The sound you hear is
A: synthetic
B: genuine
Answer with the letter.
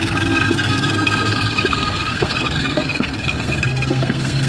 A